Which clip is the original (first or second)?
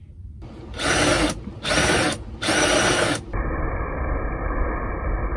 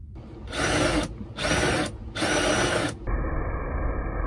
second